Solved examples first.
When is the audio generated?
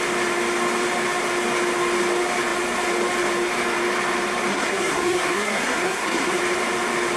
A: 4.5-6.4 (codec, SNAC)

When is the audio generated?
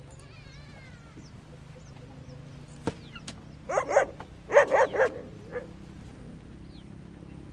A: none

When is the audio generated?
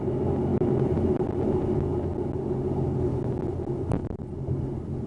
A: none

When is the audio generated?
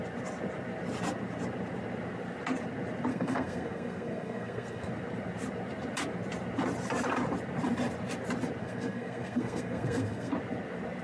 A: 3.1-4.9 (codec, SNAC); 8.6-10.3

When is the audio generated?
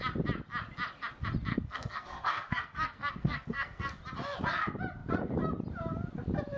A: 1.5-4.0 (codec, SNAC)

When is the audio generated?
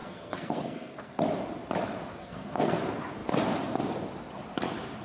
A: 0.0-1.2 (codec, SNAC); 2.2-2.8